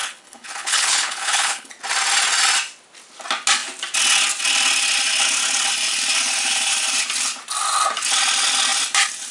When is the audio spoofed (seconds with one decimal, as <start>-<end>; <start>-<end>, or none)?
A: 0.0-1.7